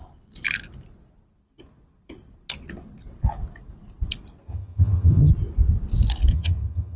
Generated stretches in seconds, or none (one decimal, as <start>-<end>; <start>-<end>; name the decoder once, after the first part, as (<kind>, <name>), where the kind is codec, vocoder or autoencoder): 4.5-5.3 (vocoder, HiFi-GAN); 6.3-7.0